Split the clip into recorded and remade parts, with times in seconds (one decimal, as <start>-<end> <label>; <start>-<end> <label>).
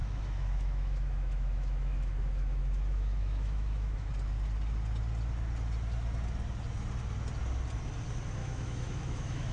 0.0-4.1 remade; 4.1-8.4 recorded; 8.4-9.5 remade